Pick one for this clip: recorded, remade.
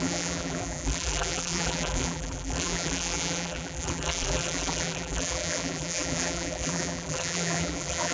remade